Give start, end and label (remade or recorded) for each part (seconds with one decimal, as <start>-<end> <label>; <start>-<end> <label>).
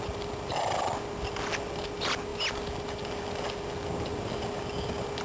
0.0-5.2 recorded